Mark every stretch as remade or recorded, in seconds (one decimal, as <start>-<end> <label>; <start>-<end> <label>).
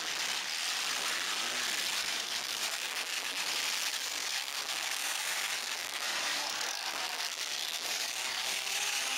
0.0-2.0 recorded; 2.0-3.5 remade; 3.5-3.9 recorded; 3.9-9.2 remade